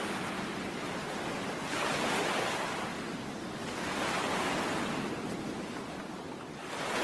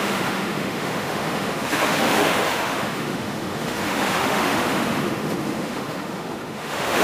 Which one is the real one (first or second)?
first